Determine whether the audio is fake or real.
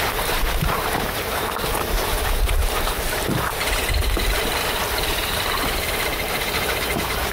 fake